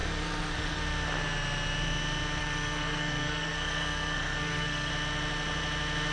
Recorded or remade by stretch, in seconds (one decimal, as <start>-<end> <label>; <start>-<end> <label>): 0.0-0.8 remade; 0.8-2.4 recorded; 2.4-4.9 remade; 4.9-6.1 recorded